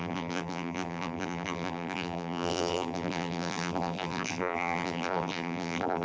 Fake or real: fake